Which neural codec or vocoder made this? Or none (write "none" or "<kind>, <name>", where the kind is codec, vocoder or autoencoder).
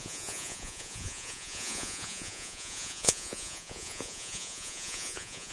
vocoder, Vocos